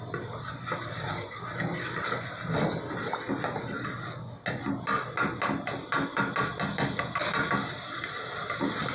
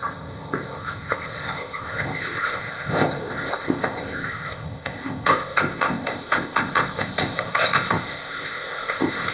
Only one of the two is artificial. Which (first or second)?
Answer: second